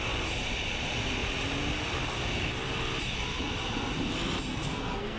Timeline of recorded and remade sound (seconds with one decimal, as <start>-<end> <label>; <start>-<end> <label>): 0.0-4.5 recorded; 4.5-5.2 remade